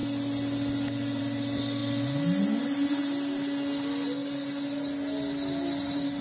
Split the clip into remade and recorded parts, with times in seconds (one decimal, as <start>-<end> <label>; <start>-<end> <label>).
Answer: 0.0-6.2 recorded